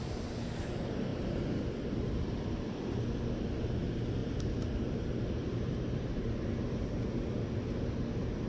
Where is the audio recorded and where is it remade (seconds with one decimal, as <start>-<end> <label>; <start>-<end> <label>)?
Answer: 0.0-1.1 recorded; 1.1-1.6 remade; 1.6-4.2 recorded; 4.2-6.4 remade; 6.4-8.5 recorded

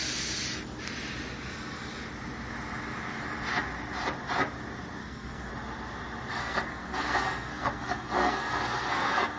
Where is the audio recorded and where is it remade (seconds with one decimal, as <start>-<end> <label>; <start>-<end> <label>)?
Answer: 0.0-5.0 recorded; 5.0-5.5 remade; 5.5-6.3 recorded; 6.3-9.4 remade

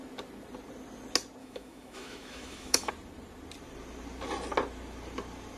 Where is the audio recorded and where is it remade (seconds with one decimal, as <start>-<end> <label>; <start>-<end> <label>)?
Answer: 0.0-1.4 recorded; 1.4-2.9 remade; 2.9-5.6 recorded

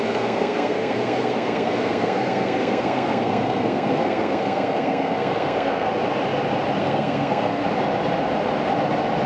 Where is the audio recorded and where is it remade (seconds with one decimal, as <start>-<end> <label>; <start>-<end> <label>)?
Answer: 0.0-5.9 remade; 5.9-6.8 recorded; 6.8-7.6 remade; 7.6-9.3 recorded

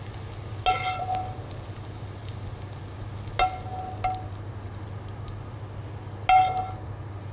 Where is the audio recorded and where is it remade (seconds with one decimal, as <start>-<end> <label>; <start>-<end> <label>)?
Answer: 0.0-7.3 recorded